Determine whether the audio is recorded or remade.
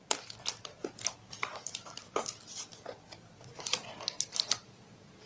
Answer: recorded